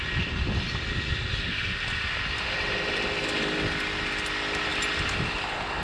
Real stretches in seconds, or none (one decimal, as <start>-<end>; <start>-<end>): 0.0-5.8